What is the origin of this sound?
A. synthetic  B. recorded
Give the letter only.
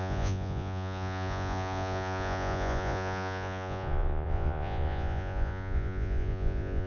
A